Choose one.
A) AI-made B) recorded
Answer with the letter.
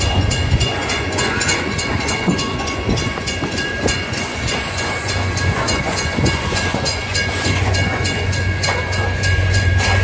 A